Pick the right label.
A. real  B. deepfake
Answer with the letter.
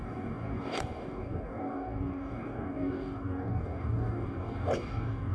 B